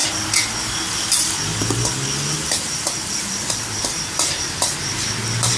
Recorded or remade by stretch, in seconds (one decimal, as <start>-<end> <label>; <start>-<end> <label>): 0.0-5.6 recorded